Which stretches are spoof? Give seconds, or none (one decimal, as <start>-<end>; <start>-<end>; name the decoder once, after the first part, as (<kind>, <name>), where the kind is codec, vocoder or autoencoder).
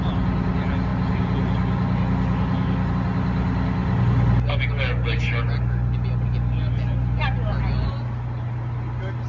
none